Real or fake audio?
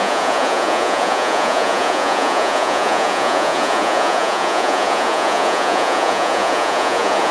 fake